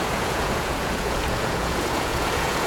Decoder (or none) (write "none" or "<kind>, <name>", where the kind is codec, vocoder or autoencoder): vocoder, Vocos